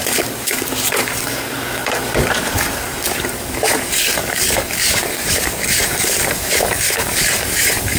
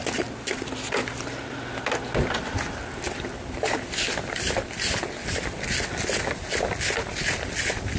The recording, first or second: second